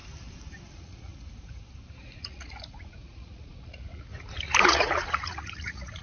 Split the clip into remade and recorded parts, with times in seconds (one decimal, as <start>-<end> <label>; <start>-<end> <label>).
0.0-0.7 recorded; 0.7-1.1 remade; 1.1-2.0 recorded; 2.0-4.1 remade; 4.1-4.6 recorded; 4.6-6.0 remade